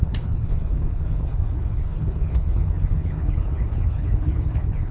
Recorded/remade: remade